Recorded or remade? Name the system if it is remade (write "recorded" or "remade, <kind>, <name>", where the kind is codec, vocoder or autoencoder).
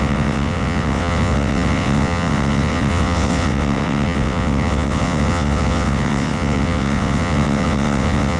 remade, vocoder, WaveNeXt